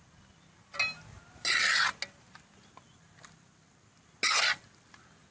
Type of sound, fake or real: real